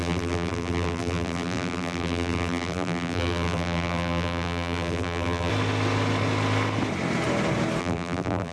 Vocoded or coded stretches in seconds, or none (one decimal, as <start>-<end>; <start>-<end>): 0.0-5.5; 7.8-8.5

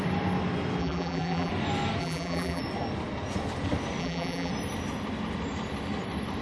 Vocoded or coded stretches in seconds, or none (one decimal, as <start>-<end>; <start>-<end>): 0.8-1.5; 2.0-2.6; 4.0-4.5

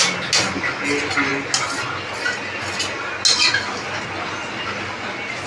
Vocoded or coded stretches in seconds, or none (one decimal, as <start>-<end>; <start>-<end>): none